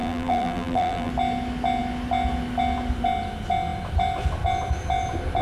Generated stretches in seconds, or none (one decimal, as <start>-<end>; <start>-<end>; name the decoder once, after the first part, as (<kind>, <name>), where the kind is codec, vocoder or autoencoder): 0.0-1.1 (vocoder, BigVGAN v2)